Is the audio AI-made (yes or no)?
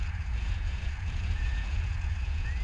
yes